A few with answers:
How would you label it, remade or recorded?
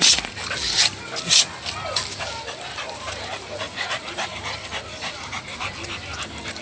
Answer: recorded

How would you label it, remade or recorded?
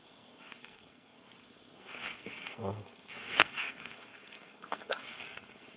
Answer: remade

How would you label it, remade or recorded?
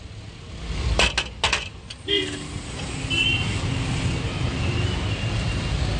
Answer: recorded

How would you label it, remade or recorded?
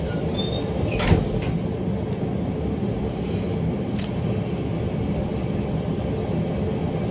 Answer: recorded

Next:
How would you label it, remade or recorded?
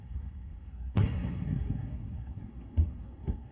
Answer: remade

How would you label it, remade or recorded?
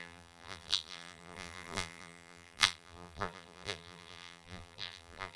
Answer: remade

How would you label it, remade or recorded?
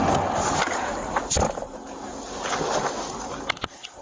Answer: recorded